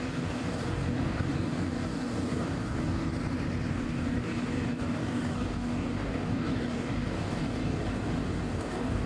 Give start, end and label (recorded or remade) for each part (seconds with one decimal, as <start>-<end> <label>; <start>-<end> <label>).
0.0-3.1 remade; 3.1-3.7 recorded; 3.7-9.1 remade